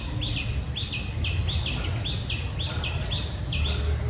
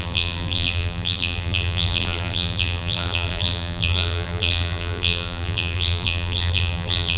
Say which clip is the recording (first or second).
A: first